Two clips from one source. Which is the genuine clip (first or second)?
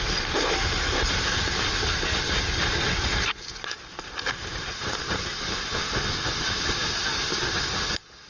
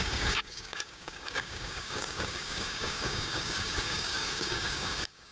first